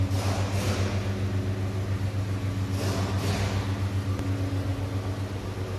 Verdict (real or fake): real